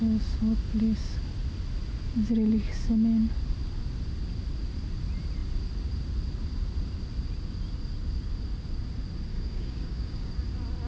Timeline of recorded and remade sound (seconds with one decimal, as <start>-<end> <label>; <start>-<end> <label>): 0.0-9.3 recorded; 9.3-10.3 remade; 10.3-10.9 recorded